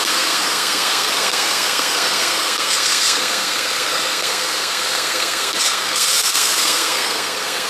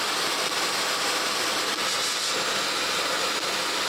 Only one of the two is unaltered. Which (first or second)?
second